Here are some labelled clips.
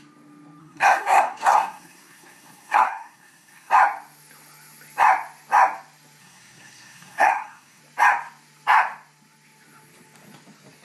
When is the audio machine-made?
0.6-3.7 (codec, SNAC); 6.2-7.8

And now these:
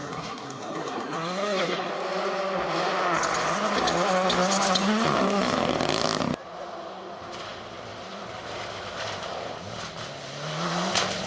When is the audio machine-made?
0.0-1.9 (codec, SNAC)

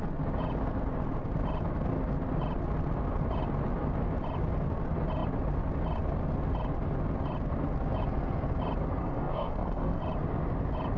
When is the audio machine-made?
9.0-10.0 (codec, SNAC)

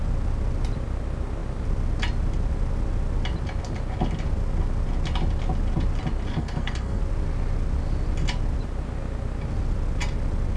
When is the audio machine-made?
6.3-7.0 (codec, SNAC)

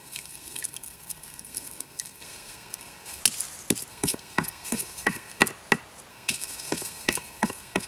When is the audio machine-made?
0.0-3.2 (codec, SNAC); 3.9-5.4; 6.1-7.9

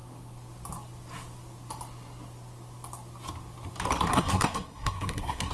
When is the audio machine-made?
4.1-5.5 (codec, SNAC)

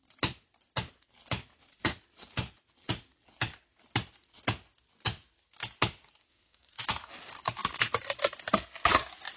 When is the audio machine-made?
6.3-6.8 (codec, SNAC)

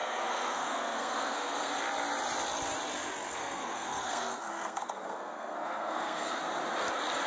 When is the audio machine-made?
0.0-1.7 (codec, SNAC); 3.4-6.4